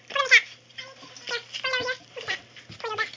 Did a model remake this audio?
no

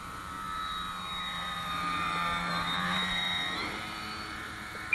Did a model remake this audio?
yes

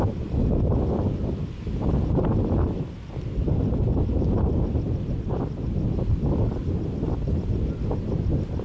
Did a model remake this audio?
no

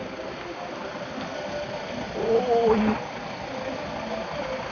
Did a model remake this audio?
no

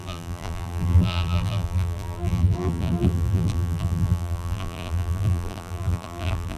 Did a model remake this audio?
yes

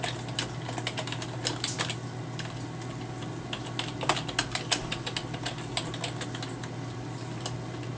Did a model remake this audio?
no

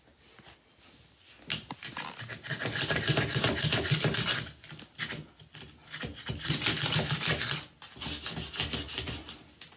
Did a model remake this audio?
no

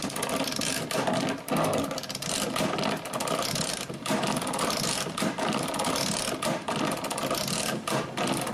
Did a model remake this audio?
no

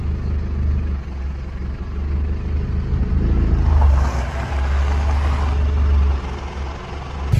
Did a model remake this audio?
no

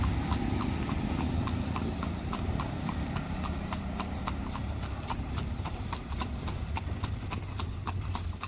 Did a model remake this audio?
yes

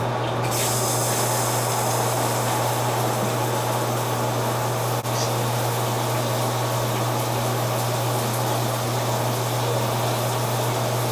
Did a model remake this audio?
no